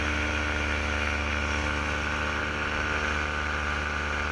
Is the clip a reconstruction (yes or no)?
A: no